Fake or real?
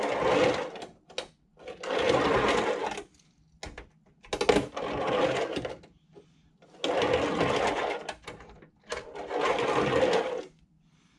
real